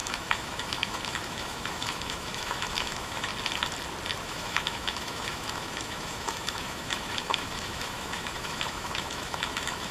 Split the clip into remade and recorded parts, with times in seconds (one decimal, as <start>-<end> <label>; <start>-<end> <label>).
0.0-3.3 remade; 3.3-4.2 recorded; 4.2-9.9 remade